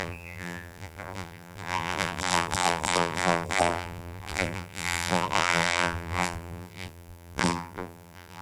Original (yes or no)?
no